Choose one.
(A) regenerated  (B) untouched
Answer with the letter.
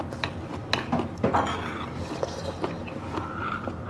B